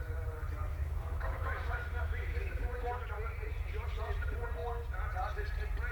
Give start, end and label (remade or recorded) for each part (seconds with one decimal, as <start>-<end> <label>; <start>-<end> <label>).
0.0-0.7 recorded; 0.7-3.0 remade; 3.0-5.9 recorded